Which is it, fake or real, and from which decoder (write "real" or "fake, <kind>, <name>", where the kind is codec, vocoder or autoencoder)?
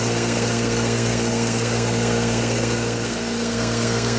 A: fake, codec, SNAC